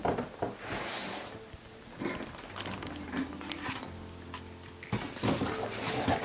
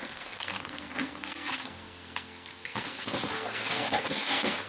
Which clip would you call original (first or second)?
first